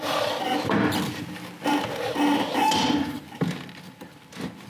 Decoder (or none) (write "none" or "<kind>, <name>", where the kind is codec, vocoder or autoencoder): none